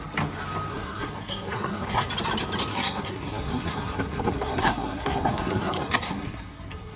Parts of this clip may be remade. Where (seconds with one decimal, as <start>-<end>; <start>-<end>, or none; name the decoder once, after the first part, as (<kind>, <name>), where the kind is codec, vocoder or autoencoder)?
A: 0.7-2.1 (codec, SNAC); 2.7-7.0